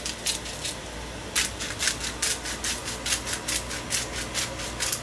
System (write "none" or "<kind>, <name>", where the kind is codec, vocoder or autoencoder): none